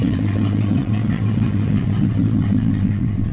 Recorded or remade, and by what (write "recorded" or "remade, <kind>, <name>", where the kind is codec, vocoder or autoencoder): remade, vocoder, WaveNeXt